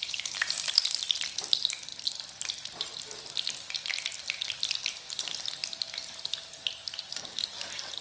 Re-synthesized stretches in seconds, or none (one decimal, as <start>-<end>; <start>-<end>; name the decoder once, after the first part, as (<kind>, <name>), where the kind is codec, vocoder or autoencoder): none